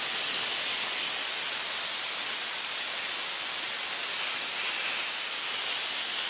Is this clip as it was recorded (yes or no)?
yes